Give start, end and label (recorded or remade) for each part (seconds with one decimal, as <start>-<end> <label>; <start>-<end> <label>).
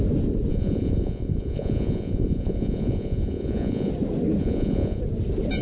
0.0-0.5 recorded; 0.5-3.9 remade; 3.9-4.4 recorded; 4.4-5.0 remade; 5.0-5.6 recorded